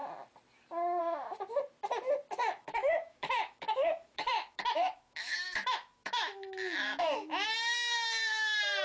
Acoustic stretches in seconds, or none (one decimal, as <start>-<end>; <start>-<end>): 0.0-2.4; 7.3-8.8